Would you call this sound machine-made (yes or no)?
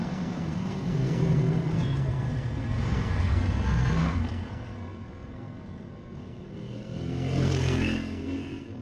yes